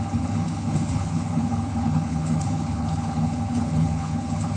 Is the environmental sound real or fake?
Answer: fake